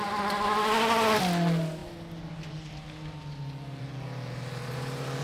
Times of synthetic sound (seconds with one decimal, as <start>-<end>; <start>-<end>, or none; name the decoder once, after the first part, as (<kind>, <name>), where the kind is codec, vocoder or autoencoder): none